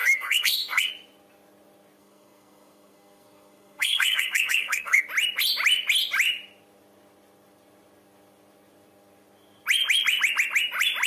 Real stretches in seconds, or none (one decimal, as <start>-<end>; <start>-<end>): 0.9-2.0; 5.0-11.1